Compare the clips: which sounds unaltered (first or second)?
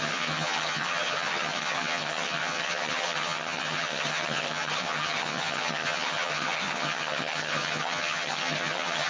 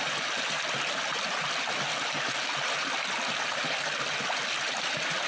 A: second